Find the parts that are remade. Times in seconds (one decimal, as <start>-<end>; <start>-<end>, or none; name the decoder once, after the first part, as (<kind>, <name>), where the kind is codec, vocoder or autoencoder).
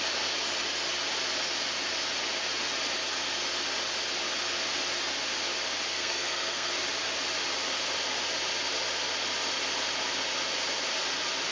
5.9-6.7 (codec, SNAC)